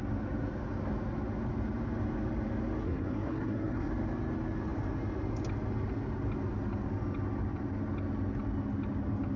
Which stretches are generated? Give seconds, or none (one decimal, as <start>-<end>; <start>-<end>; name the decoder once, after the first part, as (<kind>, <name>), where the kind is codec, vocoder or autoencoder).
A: 2.8-3.9 (codec, SNAC)